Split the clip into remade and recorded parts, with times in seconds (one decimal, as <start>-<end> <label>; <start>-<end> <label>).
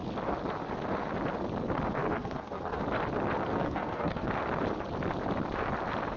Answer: 0.0-2.0 recorded; 2.0-2.8 remade; 2.8-3.5 recorded; 3.5-4.3 remade; 4.3-6.2 recorded